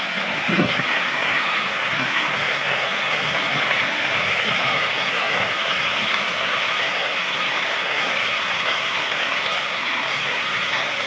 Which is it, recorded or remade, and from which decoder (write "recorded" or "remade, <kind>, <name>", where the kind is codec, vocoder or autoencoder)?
remade, codec, SNAC